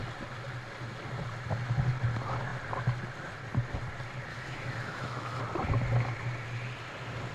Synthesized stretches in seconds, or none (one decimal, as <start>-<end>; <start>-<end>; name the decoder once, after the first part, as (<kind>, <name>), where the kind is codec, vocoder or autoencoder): 4.3-5.4 (autoencoder, DAC-VAE)